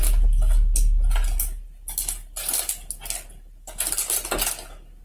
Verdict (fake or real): real